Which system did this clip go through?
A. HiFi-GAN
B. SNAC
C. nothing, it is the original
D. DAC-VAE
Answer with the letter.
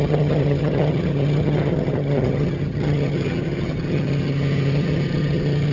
A